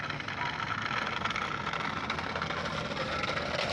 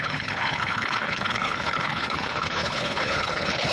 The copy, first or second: second